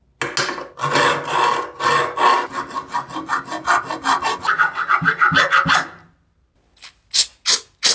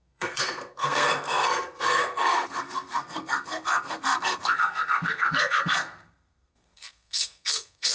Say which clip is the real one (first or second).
first